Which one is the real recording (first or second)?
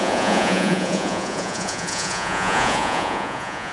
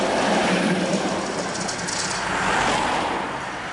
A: second